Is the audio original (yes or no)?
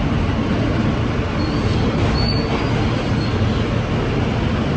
yes